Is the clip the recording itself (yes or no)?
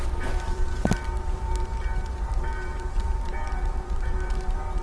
no